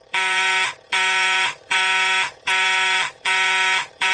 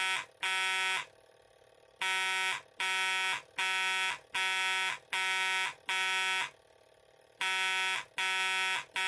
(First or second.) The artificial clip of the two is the first